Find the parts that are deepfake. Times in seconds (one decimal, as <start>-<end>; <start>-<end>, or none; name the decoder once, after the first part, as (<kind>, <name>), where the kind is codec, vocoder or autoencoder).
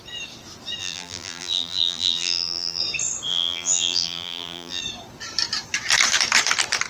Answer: 0.8-2.8 (vocoder, BigVGAN v2); 3.3-4.8